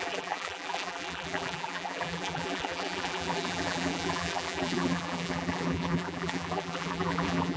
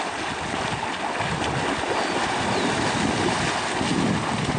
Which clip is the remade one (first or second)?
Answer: first